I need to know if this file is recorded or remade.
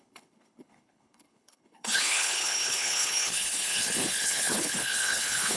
remade